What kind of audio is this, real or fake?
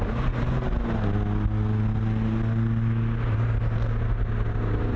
real